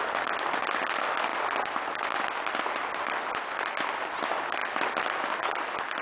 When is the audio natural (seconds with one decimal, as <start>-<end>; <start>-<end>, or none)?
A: 0.0-6.0